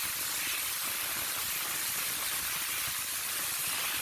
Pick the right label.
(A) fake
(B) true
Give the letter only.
B